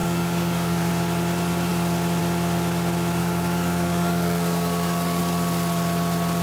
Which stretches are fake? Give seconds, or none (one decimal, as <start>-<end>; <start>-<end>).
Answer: 0.0-0.9; 3.2-5.2